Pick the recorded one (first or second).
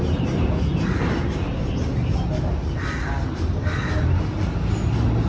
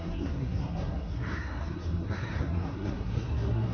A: first